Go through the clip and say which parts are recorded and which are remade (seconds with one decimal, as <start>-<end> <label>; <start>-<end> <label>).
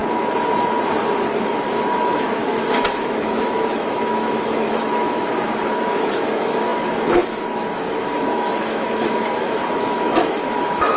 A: 0.0-1.3 recorded; 1.3-11.0 remade